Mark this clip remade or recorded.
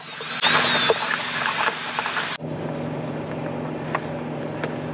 recorded